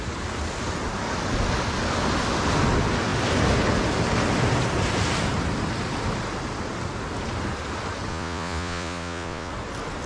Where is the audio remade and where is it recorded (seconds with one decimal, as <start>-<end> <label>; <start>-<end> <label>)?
0.0-8.1 recorded; 8.1-9.5 remade; 9.5-10.1 recorded